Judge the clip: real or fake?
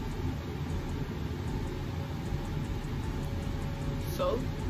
real